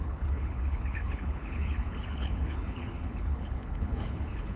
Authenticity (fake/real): fake